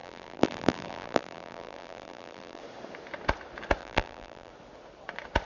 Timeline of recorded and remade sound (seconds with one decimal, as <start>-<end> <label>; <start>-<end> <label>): 0.0-2.6 remade; 2.6-3.8 recorded; 3.8-4.5 remade; 4.5-5.5 recorded